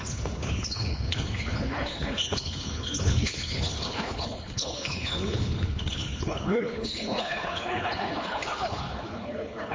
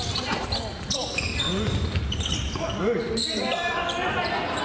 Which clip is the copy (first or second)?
first